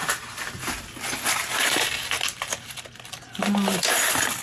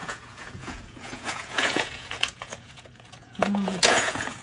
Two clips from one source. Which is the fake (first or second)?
second